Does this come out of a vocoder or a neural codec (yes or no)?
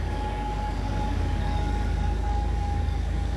yes